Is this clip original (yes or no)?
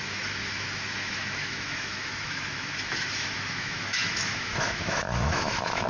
no